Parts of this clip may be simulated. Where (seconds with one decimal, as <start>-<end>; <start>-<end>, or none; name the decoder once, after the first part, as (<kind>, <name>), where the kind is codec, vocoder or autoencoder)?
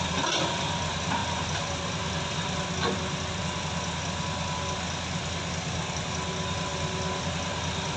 none